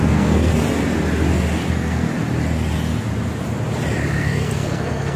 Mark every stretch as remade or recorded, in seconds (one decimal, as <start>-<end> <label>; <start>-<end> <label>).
0.0-0.5 remade; 0.5-1.7 recorded; 1.7-2.1 remade; 2.1-4.1 recorded; 4.1-5.2 remade